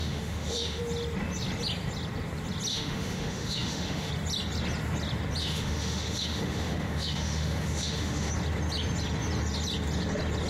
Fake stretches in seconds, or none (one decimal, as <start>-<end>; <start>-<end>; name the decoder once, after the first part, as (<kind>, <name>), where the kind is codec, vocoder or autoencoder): 0.0-0.8 (autoencoder, DAC-VAE); 2.7-4.1; 5.4-8.3